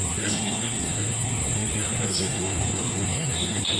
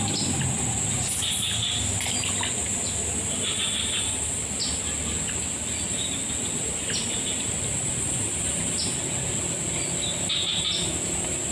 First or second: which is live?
second